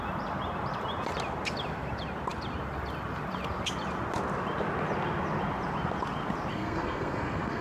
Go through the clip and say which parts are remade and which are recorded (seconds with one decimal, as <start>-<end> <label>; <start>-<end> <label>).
0.0-6.5 recorded; 6.5-7.6 remade